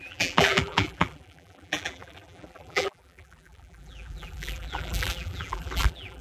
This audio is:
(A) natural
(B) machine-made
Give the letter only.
B